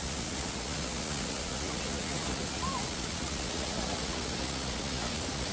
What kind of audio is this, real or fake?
fake